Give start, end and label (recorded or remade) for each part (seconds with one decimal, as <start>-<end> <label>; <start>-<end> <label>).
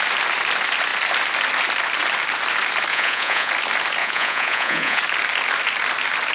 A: 0.0-2.9 recorded; 2.9-3.5 remade; 3.5-4.0 recorded; 4.0-5.0 remade; 5.0-6.3 recorded